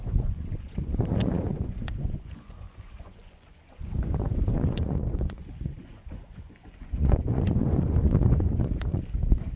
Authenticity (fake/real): fake